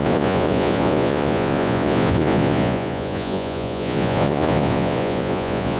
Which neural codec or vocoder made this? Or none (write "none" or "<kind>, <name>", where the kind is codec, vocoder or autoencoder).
vocoder, Vocos